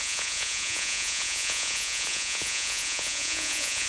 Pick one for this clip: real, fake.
fake